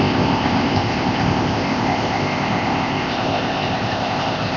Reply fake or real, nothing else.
fake